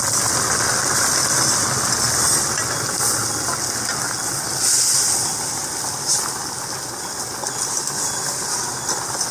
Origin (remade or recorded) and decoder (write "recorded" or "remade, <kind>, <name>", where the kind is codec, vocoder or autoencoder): recorded